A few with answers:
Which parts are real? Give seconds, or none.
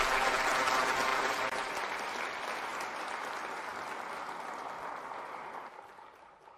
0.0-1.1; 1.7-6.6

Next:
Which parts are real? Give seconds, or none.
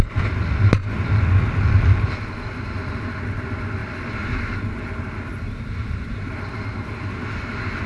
0.0-7.9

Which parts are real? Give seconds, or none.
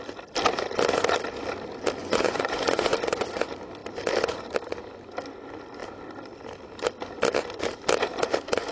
0.0-2.0; 3.4-8.7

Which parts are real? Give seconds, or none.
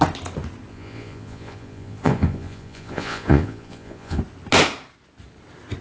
0.0-0.7; 4.2-5.8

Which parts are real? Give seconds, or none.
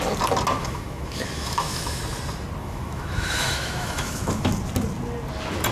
0.0-0.6; 2.0-2.6; 4.5-5.7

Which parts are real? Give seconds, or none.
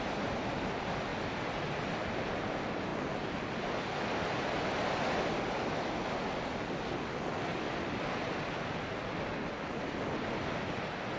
0.0-11.2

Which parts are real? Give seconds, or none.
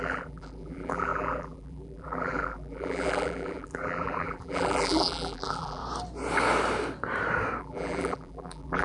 5.8-7.6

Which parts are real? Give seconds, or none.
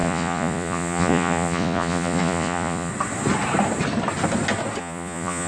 2.9-4.8